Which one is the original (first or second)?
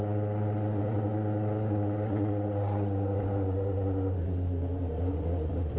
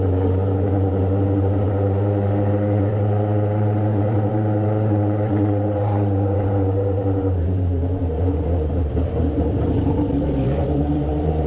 first